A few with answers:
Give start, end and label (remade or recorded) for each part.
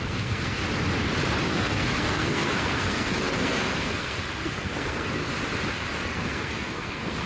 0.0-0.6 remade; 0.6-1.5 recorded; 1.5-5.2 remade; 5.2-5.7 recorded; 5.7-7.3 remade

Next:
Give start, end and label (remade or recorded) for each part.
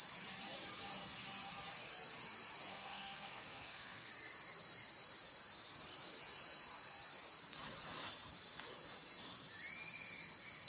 0.0-2.7 recorded; 2.7-4.1 remade; 4.1-10.7 recorded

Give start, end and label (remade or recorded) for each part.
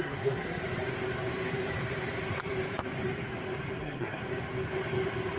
0.0-0.6 remade; 0.6-3.8 recorded; 3.8-4.2 remade; 4.2-5.4 recorded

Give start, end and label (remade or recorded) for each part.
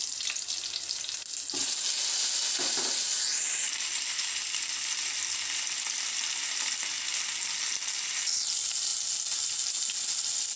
0.0-10.6 recorded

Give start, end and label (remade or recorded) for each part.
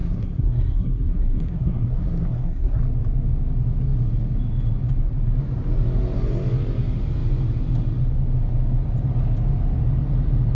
0.0-2.8 remade; 2.8-10.5 recorded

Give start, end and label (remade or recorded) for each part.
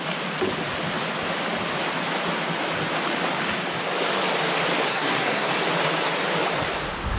0.0-4.9 recorded; 4.9-5.5 remade; 5.5-7.2 recorded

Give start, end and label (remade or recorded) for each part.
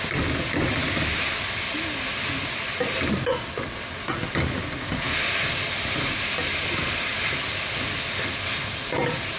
0.0-9.4 recorded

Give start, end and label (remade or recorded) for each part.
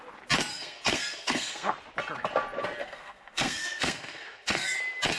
0.0-0.5 recorded; 0.5-1.7 remade; 1.7-2.8 recorded; 2.8-4.8 remade; 4.8-5.2 recorded